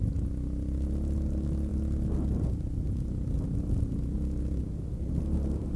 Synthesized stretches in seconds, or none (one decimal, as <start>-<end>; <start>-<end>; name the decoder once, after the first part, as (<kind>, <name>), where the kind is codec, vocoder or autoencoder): none